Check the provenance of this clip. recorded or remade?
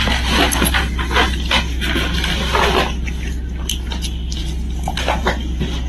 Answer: recorded